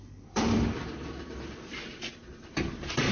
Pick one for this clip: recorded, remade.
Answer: remade